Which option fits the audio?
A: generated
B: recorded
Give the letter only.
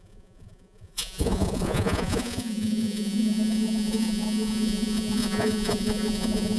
A